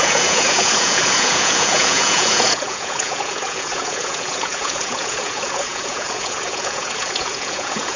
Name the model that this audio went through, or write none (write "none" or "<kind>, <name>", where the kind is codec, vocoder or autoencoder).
vocoder, Vocos